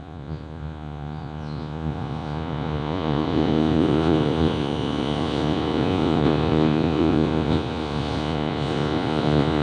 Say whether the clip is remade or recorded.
remade